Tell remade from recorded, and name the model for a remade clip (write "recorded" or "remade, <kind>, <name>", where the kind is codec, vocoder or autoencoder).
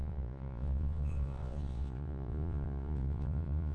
remade, vocoder, Vocos